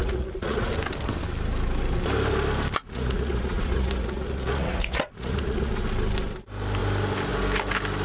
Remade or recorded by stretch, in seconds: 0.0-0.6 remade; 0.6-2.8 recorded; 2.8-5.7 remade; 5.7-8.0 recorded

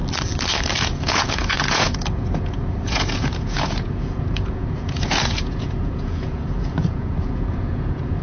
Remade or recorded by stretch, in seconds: 0.0-0.8 recorded; 0.8-8.2 remade

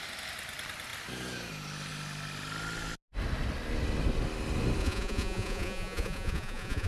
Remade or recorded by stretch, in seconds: 0.0-4.8 recorded; 4.8-6.9 remade

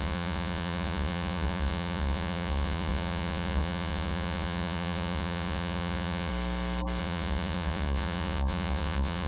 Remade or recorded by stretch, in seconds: 0.0-6.3 remade; 6.3-7.0 recorded; 7.0-9.3 remade

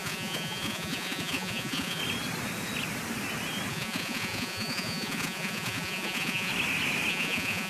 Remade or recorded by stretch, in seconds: 0.0-2.0 remade; 2.0-3.7 recorded; 3.7-6.5 remade; 6.5-7.1 recorded; 7.1-7.7 remade

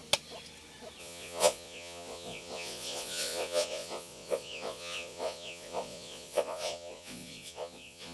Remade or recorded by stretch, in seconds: 0.0-1.0 recorded; 1.0-8.1 remade

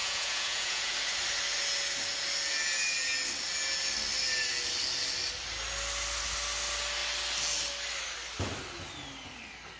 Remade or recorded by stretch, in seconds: 0.0-0.9 remade; 0.9-9.8 recorded